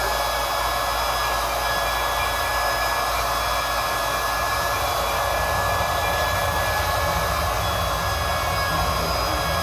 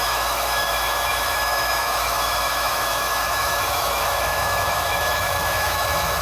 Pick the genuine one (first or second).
first